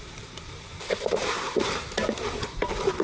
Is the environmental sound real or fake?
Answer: fake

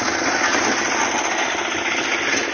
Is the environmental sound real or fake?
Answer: real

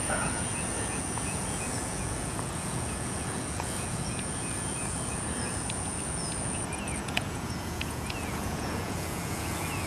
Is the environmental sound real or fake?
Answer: fake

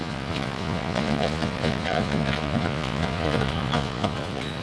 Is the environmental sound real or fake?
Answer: fake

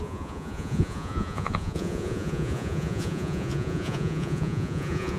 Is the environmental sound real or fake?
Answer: fake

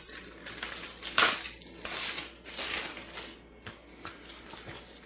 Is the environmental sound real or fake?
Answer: real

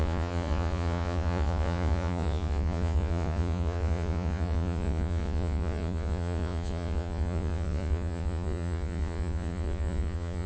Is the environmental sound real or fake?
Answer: fake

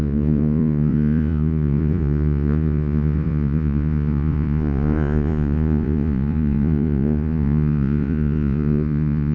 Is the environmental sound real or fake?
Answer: fake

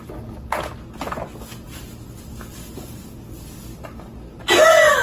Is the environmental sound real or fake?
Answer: real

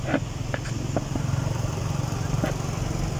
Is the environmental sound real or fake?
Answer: real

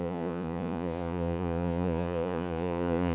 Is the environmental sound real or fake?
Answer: fake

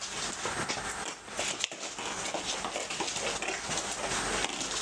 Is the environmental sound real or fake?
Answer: real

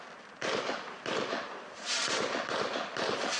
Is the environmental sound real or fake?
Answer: real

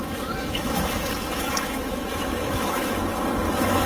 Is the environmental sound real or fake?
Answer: fake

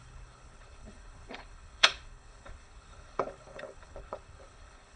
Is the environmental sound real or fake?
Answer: fake